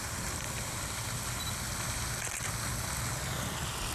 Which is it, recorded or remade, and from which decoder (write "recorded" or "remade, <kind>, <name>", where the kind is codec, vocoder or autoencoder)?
recorded